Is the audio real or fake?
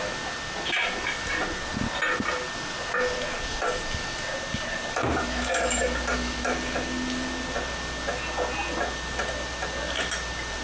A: real